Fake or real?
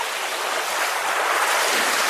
real